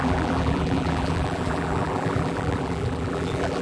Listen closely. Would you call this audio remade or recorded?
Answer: remade